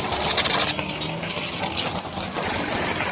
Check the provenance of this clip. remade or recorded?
recorded